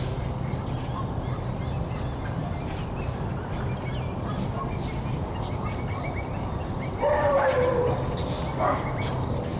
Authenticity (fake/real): real